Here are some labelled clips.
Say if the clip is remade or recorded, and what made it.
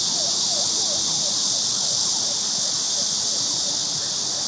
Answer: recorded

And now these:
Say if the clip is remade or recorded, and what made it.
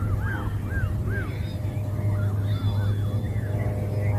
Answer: recorded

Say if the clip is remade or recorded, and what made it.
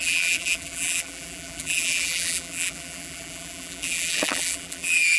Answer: remade, vocoder, BigVGAN v2